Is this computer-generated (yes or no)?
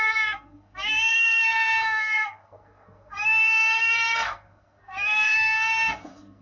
yes